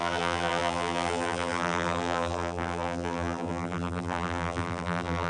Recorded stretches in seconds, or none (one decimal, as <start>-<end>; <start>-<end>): none